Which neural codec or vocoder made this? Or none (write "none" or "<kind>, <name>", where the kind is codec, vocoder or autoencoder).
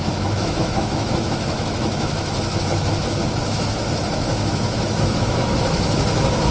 autoencoder, DAC-VAE